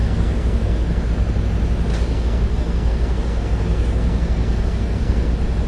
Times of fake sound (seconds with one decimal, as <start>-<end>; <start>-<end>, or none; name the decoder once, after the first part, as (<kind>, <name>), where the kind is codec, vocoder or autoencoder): 0.0-1.1 (codec, SNAC); 1.9-5.3